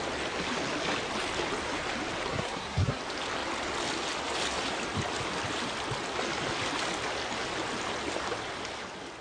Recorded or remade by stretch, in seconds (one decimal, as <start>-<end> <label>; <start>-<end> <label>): 0.0-2.3 recorded; 2.3-3.0 remade; 3.0-9.2 recorded